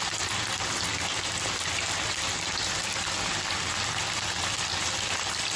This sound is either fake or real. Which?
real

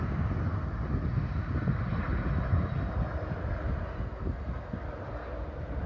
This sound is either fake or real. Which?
real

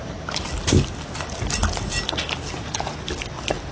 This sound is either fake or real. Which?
real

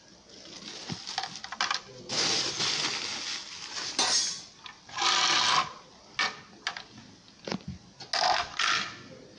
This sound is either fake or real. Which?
real